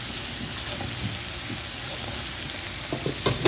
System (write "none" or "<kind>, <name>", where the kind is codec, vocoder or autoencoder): none